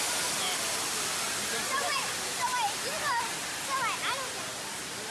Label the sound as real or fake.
real